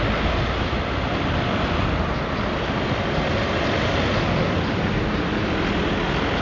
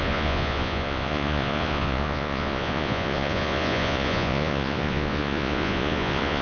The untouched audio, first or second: first